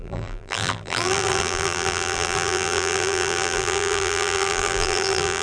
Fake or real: fake